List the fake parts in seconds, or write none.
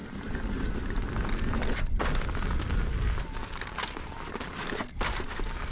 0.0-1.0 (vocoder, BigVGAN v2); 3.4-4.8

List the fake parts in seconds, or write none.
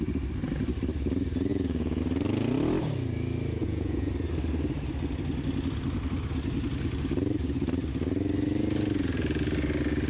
1.5-2.0 (vocoder, Vocos); 3.6-4.1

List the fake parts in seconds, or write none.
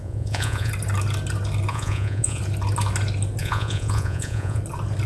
0.0-0.7 (vocoder, Vocos); 1.7-2.4; 3.4-4.6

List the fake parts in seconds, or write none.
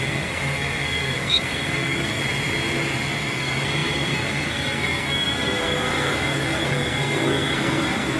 0.0-2.2 (codec, SNAC); 3.2-8.2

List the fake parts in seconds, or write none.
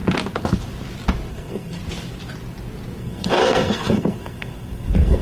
1.3-1.8 (codec, SNAC); 3.0-5.2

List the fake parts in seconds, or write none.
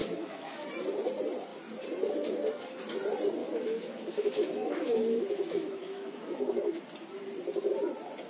0.0-0.6 (autoencoder, DAC-VAE); 3.4-6.8